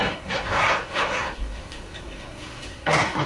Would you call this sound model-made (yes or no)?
yes